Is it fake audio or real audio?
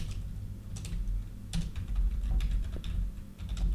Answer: real